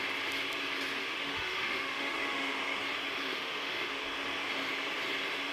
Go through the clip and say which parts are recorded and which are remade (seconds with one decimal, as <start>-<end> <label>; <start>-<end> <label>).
0.0-1.0 recorded; 1.0-2.6 remade; 2.6-3.3 recorded; 3.3-4.0 remade; 4.0-5.5 recorded